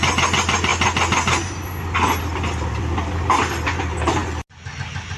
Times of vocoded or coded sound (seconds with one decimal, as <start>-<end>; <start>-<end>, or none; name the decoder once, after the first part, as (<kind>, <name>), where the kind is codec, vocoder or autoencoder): none